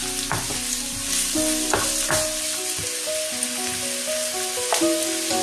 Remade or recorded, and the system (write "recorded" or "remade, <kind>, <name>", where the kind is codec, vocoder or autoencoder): recorded